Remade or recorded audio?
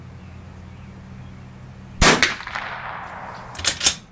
recorded